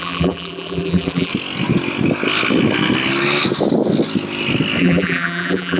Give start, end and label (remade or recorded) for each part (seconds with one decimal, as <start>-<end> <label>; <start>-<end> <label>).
0.0-1.3 remade; 1.3-4.8 recorded; 4.8-5.8 remade